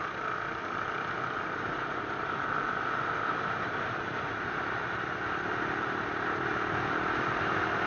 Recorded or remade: recorded